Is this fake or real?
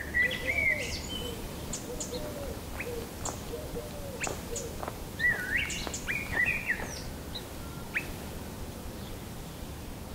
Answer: real